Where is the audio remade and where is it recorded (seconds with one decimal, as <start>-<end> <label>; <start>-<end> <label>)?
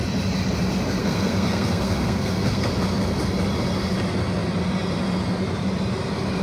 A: 0.0-1.0 recorded; 1.0-2.7 remade; 2.7-6.4 recorded